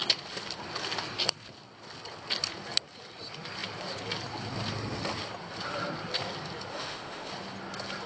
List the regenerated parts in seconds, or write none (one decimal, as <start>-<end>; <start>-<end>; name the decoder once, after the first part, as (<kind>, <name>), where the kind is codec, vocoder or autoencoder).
6.7-7.3 (autoencoder, DAC-VAE)